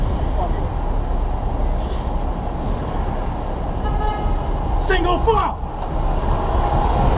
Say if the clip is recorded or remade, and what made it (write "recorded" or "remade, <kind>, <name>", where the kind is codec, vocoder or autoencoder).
recorded